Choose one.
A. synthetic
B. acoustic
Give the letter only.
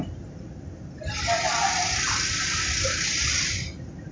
B